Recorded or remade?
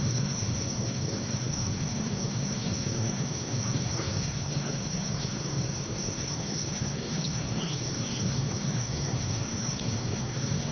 remade